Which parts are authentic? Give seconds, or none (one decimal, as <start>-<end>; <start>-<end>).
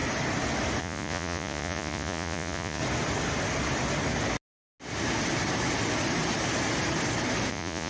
0.0-0.8; 2.8-7.5